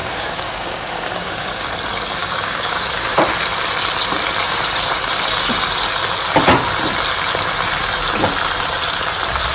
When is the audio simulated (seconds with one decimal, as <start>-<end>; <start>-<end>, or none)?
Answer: 0.0-1.7; 2.2-3.2